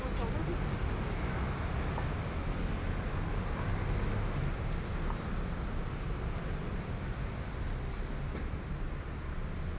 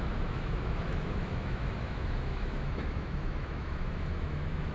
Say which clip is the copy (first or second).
second